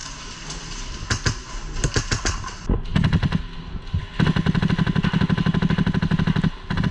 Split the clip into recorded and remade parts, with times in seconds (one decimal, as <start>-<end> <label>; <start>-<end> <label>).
0.0-6.9 recorded